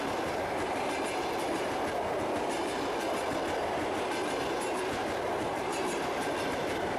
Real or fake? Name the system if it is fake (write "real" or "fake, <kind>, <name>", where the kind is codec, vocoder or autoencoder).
real